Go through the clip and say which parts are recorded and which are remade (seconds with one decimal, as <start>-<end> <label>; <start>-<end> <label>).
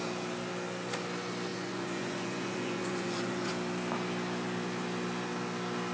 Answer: 0.0-1.5 recorded; 1.5-3.5 remade; 3.5-5.9 recorded